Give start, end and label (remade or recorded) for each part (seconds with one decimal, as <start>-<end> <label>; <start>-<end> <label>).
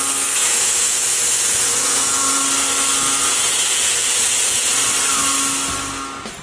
0.0-0.4 recorded; 0.4-2.4 remade; 2.4-3.2 recorded; 3.2-4.7 remade; 4.7-6.4 recorded